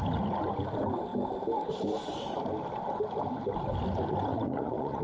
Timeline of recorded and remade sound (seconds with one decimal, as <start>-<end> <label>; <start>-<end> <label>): 0.0-4.3 recorded; 4.3-5.0 remade

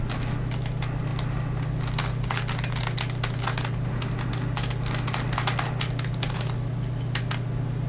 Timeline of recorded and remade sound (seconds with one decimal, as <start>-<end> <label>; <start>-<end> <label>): 0.0-7.9 recorded

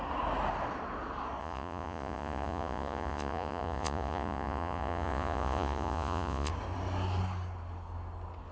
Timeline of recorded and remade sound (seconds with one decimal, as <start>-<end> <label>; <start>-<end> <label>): 0.0-1.4 recorded; 1.4-6.5 remade; 6.5-8.5 recorded

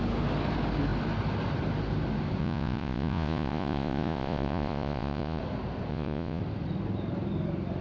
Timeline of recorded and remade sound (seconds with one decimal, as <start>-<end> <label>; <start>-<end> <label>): 0.0-2.4 recorded; 2.4-5.4 remade; 5.4-5.9 recorded; 5.9-6.4 remade; 6.4-7.8 recorded

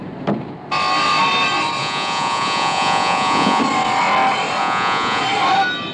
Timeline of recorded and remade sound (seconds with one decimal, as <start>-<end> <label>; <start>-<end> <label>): 0.0-1.8 recorded; 1.8-3.6 remade; 3.6-4.6 recorded; 4.6-5.2 remade; 5.2-5.9 recorded

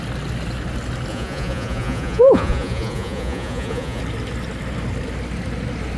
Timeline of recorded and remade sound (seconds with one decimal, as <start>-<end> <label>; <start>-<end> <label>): 0.0-1.1 recorded; 1.1-4.0 remade; 4.0-6.0 recorded

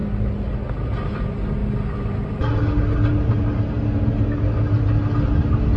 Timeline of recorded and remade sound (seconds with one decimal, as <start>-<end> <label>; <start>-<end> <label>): 0.0-5.8 recorded